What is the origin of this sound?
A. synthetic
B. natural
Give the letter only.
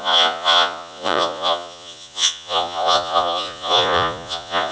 A